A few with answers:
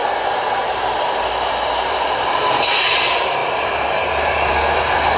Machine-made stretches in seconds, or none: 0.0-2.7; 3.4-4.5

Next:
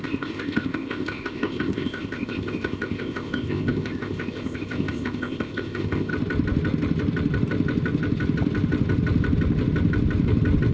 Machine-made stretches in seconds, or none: 0.0-6.1